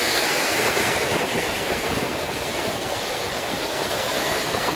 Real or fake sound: fake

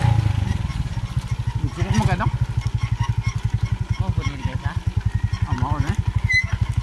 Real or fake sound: real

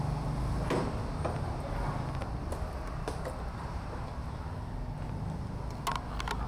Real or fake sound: real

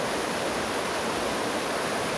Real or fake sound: real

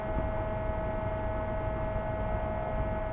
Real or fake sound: real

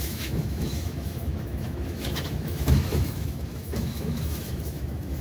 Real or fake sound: fake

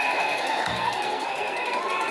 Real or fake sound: fake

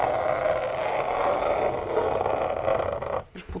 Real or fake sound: real